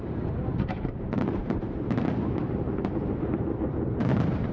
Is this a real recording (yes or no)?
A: no